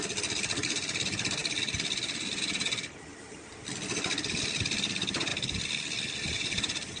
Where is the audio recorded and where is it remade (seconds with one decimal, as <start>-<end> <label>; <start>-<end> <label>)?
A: 0.0-7.0 recorded